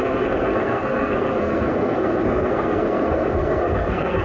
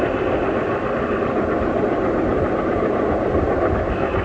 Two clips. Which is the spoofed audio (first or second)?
first